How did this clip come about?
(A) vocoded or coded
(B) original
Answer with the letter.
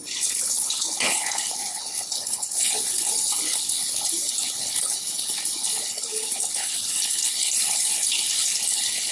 A